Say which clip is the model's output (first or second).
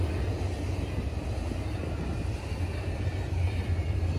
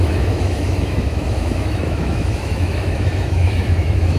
second